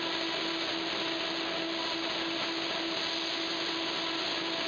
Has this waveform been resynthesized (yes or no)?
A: no